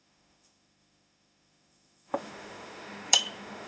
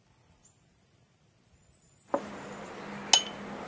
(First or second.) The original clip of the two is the second